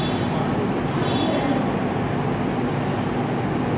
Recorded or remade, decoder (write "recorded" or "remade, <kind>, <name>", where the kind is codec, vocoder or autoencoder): recorded